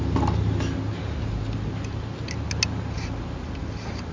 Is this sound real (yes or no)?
yes